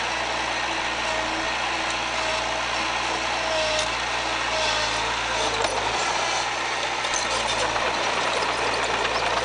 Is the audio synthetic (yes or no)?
no